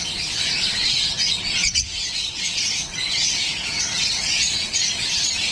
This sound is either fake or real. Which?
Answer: fake